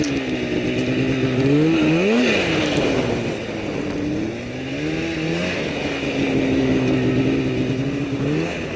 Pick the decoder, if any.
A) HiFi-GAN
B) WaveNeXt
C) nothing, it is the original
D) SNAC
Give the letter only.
C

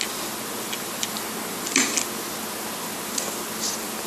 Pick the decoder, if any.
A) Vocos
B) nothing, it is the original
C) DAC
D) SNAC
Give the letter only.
B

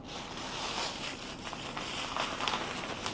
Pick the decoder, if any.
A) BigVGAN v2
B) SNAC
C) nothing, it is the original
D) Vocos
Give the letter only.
C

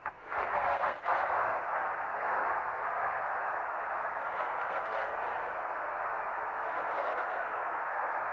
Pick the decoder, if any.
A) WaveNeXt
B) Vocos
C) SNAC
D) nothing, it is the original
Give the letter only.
C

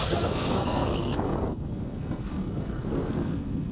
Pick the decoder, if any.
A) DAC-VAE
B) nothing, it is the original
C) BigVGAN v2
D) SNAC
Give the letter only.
D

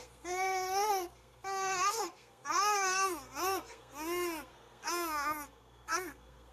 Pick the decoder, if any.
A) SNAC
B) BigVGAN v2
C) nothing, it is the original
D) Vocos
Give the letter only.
A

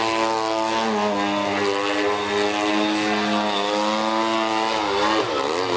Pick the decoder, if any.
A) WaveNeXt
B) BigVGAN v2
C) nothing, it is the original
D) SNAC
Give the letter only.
C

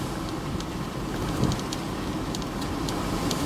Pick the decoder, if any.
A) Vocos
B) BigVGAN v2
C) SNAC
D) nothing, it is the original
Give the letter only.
D